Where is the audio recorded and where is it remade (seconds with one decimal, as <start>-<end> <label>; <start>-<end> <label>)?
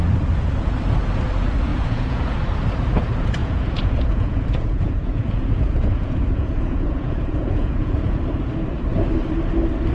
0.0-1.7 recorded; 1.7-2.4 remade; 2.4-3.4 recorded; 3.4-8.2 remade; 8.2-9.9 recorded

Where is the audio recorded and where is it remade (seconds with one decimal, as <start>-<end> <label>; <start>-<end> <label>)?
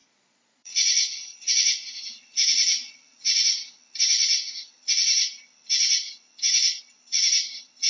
0.0-1.5 remade; 1.5-7.9 recorded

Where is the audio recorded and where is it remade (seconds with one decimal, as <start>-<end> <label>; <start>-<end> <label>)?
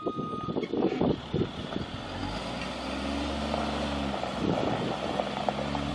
0.0-5.9 recorded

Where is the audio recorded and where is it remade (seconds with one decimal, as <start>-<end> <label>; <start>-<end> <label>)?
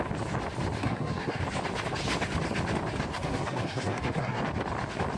0.0-0.8 recorded; 0.8-1.4 remade; 1.4-3.1 recorded; 3.1-4.4 remade; 4.4-5.2 recorded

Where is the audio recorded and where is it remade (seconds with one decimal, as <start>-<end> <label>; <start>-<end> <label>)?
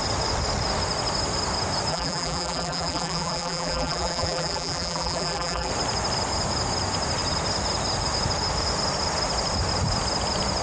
0.0-1.9 recorded; 1.9-5.7 remade; 5.7-10.6 recorded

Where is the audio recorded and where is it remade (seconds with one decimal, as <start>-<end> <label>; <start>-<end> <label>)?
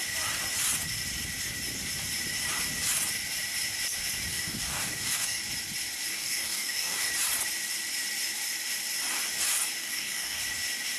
0.0-4.3 recorded; 4.3-5.4 remade; 5.4-6.1 recorded; 6.1-7.1 remade; 7.1-9.8 recorded; 9.8-10.4 remade; 10.4-11.0 recorded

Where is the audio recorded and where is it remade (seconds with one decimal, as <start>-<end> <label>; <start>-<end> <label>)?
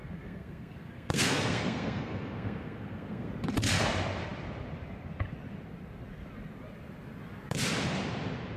0.0-3.3 remade; 3.3-8.6 recorded